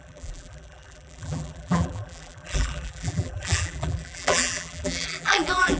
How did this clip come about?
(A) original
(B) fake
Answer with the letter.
B